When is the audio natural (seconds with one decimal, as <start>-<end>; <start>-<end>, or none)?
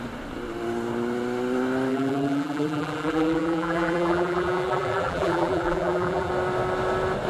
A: 0.0-1.9; 6.3-7.3